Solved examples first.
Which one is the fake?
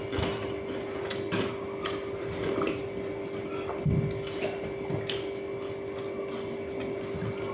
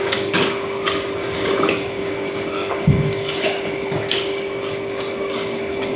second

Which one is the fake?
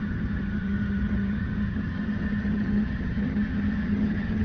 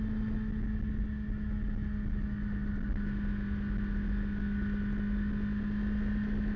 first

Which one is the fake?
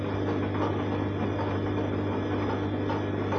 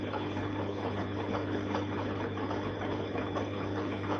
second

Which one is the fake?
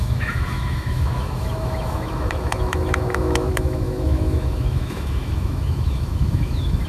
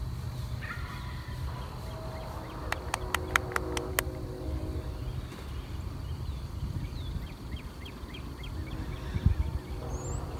first